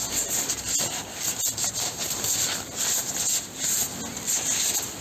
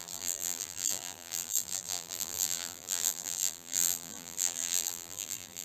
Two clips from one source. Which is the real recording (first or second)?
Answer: first